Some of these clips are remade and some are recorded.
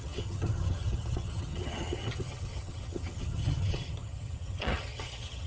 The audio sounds remade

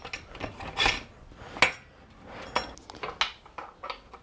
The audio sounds recorded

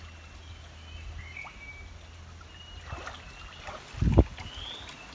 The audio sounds recorded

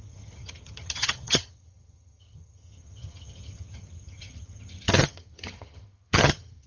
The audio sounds remade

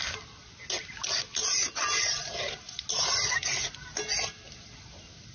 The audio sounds recorded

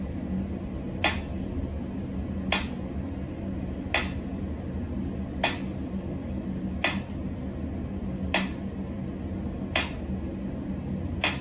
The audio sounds recorded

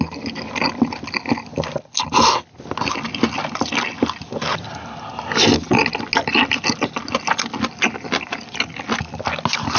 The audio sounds recorded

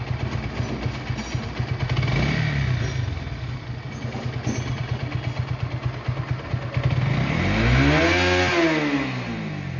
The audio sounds recorded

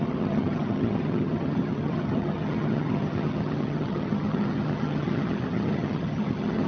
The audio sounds remade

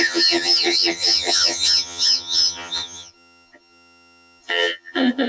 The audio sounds remade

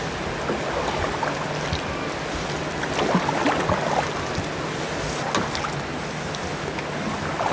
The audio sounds recorded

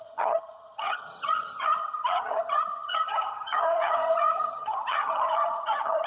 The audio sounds remade